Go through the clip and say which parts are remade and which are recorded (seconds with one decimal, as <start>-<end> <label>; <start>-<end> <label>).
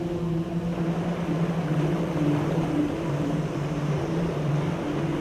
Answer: 0.0-1.7 recorded; 1.7-4.5 remade; 4.5-5.2 recorded